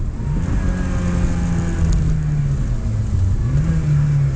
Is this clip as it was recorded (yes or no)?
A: yes